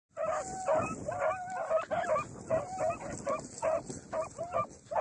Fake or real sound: real